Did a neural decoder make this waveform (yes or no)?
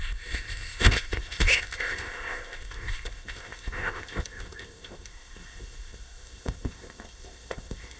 yes